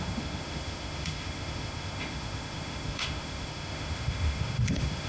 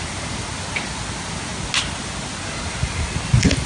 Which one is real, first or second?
second